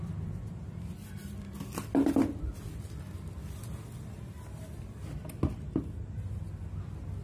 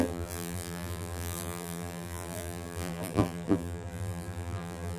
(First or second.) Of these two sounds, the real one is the first